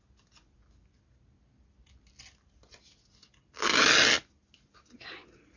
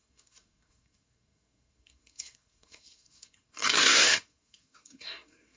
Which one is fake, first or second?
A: second